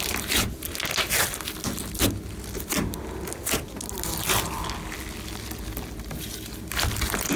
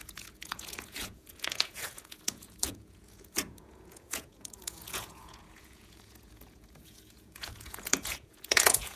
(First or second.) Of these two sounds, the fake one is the second